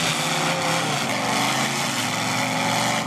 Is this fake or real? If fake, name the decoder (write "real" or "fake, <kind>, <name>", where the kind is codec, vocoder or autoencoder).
real